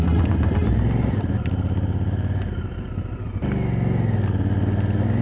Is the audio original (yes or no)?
yes